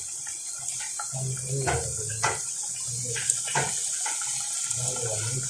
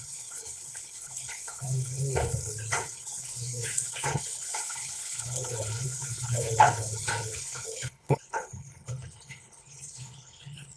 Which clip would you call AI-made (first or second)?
second